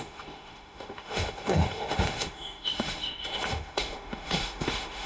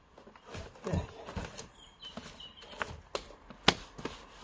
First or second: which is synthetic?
first